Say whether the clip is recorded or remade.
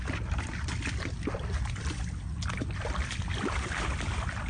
remade